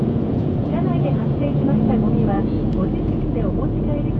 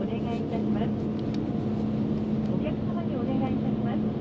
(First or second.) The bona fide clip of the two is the second